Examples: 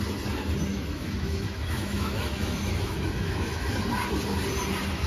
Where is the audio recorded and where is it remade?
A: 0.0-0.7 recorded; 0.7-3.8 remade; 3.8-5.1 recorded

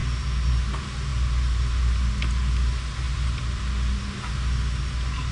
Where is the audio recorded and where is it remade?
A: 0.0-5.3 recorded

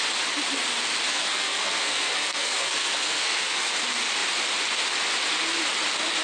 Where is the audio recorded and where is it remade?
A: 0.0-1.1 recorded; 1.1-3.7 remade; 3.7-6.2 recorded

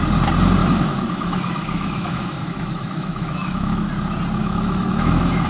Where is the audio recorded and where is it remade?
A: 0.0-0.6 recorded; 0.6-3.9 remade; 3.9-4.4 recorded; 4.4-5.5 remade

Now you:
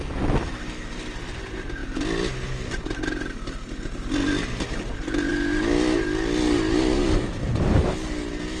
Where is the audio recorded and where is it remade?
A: 0.0-8.6 recorded

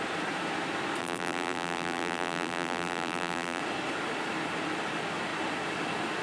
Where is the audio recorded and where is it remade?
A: 0.0-1.0 recorded; 1.0-3.6 remade; 3.6-6.2 recorded

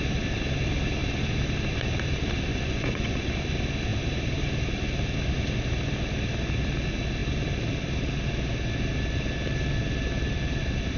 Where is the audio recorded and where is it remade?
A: 0.0-2.5 recorded; 2.5-3.2 remade; 3.2-11.0 recorded